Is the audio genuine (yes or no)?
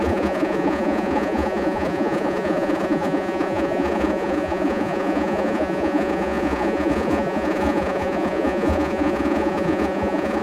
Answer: no